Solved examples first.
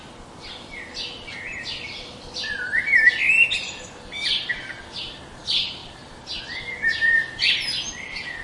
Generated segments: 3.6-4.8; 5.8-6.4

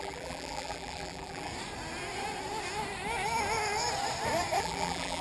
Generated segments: 0.0-1.5; 4.6-5.2

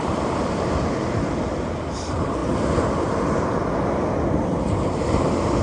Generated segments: 0.0-2.4; 4.3-5.6

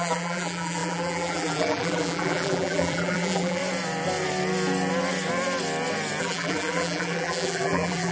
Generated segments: 0.0-3.6; 6.2-8.1

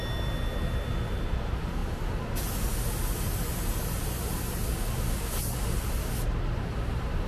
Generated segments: none

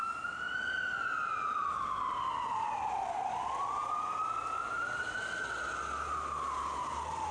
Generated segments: none

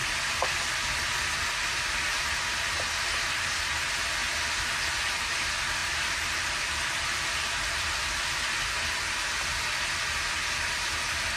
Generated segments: 5.8-6.5